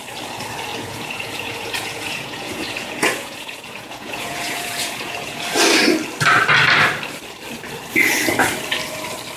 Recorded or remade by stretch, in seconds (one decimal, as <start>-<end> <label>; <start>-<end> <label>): 0.0-0.7 recorded; 0.7-5.4 remade; 5.4-9.4 recorded